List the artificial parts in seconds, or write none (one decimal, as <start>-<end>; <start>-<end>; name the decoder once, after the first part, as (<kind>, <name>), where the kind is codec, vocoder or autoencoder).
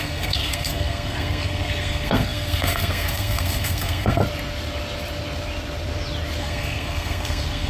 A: 0.0-4.2 (codec, SNAC); 6.4-7.7